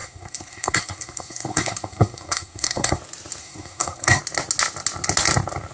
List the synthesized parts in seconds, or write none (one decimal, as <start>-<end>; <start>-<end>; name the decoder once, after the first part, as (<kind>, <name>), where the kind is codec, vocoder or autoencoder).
0.0-3.0 (codec, SNAC); 3.4-4.2